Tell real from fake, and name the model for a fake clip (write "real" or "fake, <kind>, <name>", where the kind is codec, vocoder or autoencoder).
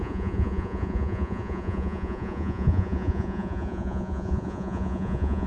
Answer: fake, vocoder, Vocos